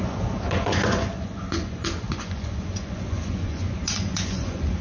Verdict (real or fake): fake